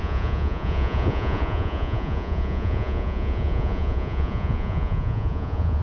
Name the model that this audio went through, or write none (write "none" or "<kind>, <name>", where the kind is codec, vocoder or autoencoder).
vocoder, Vocos